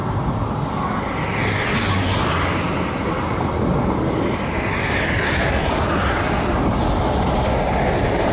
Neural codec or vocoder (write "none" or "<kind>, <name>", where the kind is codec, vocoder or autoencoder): none